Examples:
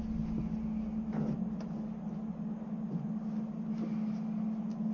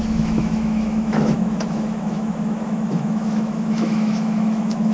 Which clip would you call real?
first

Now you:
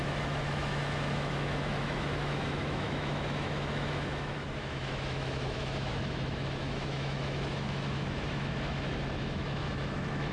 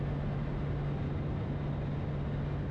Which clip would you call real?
second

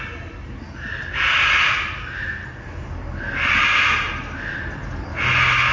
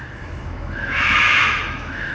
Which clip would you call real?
first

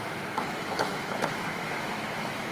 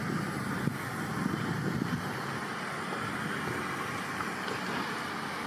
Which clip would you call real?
second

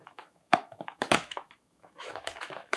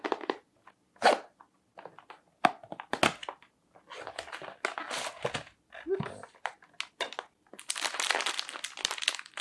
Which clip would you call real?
second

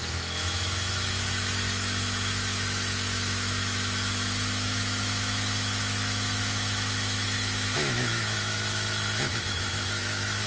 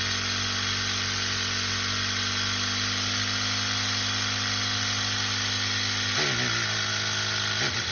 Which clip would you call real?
second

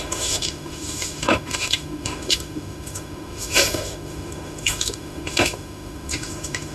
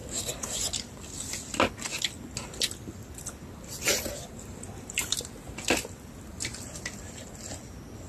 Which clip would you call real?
second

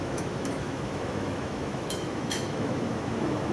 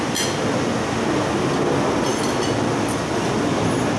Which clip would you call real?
second